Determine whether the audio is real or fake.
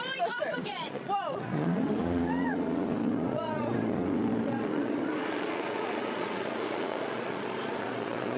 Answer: fake